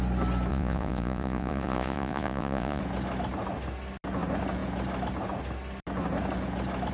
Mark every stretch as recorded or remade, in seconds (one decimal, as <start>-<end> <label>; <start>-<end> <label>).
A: 0.0-0.5 recorded; 0.5-2.8 remade; 2.8-6.9 recorded